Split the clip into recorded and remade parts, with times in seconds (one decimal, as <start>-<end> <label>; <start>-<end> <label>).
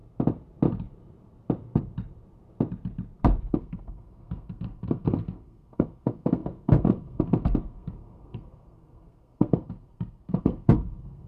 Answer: 0.0-3.5 recorded; 3.5-11.3 remade